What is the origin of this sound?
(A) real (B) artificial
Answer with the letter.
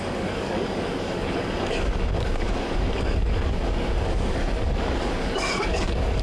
B